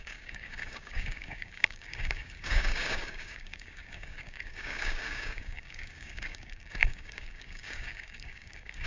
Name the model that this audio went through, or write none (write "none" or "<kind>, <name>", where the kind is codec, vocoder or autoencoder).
codec, DAC